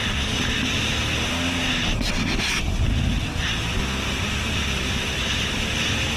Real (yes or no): yes